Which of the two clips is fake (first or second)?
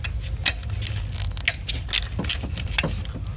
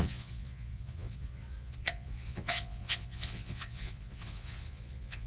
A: second